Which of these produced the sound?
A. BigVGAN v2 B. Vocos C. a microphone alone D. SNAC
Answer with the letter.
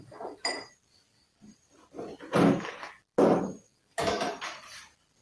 C